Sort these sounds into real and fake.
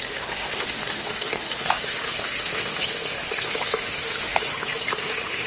fake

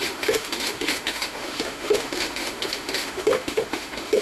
fake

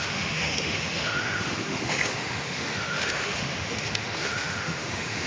fake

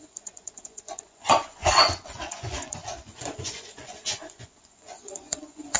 fake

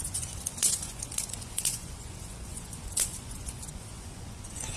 fake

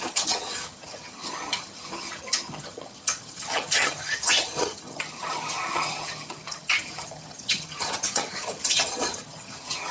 fake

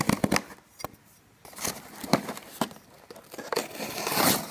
real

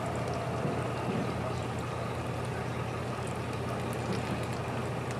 real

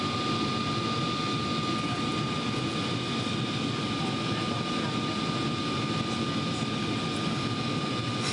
real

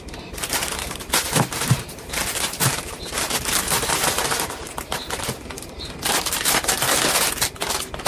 real